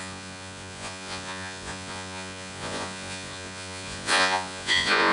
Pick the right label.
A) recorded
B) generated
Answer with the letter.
B